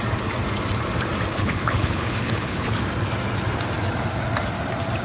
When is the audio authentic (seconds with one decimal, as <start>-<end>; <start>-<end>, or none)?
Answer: 0.0-1.3; 2.8-5.0